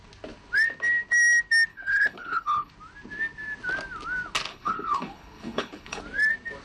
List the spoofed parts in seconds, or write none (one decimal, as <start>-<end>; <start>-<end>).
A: 1.7-2.7; 4.5-6.0